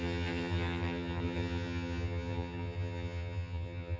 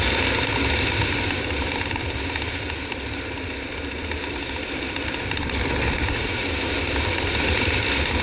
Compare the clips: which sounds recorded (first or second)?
second